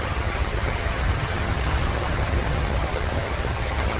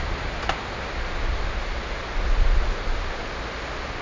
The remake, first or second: first